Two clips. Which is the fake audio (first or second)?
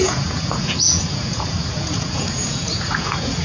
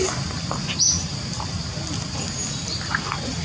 first